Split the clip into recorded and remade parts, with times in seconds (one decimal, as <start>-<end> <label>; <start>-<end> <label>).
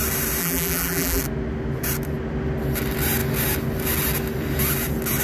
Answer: 0.0-0.4 recorded; 0.4-1.2 remade; 1.2-5.2 recorded